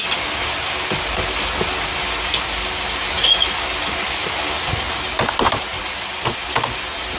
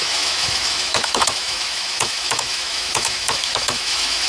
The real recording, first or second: first